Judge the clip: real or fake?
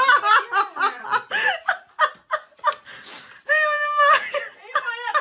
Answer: real